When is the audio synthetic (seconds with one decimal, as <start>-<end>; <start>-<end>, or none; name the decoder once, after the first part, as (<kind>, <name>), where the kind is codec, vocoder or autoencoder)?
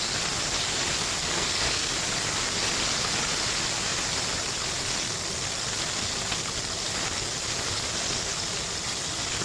1.2-1.9 (codec, SNAC)